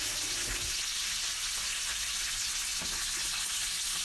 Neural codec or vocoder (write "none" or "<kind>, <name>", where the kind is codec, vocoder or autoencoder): none